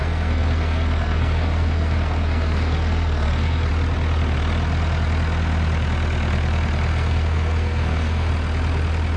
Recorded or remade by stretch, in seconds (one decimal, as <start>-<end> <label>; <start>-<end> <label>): 0.0-3.7 remade; 3.7-6.9 recorded; 6.9-8.3 remade; 8.3-9.2 recorded